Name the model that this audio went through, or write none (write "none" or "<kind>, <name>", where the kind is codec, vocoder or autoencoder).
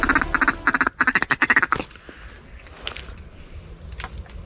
none